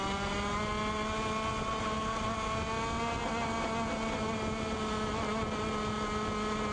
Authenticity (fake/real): real